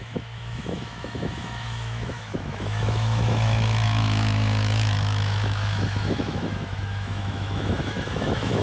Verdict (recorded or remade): remade